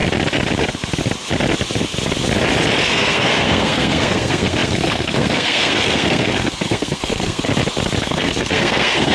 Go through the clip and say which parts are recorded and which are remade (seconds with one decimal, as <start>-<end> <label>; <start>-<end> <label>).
0.0-2.9 recorded; 2.9-7.5 remade; 7.5-8.0 recorded; 8.0-9.1 remade